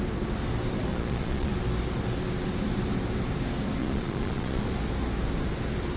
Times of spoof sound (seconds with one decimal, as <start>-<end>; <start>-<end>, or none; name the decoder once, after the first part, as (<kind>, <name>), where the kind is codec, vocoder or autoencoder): 0.9-1.5 (vocoder, Vocos); 3.8-4.6